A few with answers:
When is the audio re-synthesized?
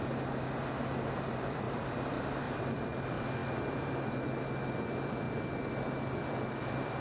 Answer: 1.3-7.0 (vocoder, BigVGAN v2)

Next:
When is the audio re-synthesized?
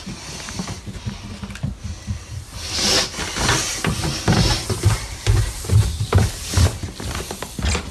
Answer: 4.6-5.7 (vocoder, BigVGAN v2)